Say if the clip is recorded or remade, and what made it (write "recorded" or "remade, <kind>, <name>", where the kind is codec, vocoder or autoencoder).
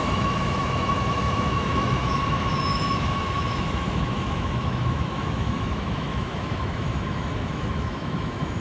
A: remade, autoencoder, DAC-VAE